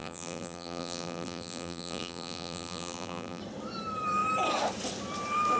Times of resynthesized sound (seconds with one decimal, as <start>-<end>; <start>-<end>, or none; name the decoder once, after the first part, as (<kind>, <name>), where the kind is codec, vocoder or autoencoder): 0.0-3.4 (vocoder, BigVGAN v2)